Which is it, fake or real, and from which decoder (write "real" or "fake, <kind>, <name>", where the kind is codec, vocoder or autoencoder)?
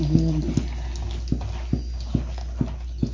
real